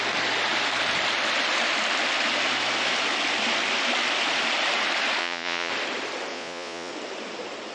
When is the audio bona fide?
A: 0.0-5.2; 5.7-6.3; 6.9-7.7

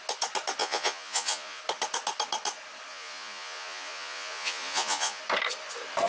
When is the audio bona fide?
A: 0.0-0.6; 1.6-2.9; 5.2-6.1

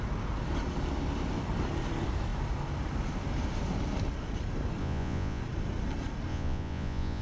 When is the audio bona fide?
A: 0.0-4.8; 5.4-6.3

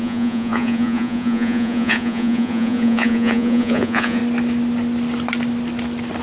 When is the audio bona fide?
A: 4.2-6.2